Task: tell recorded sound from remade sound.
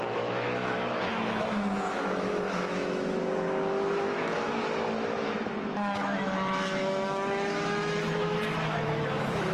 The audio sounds remade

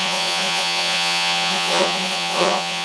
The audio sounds remade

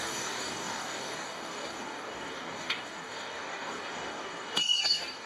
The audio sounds remade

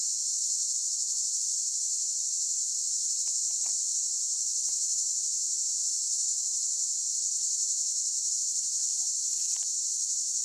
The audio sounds remade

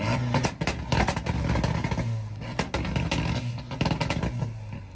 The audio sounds recorded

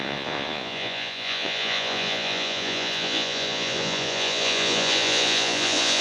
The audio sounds remade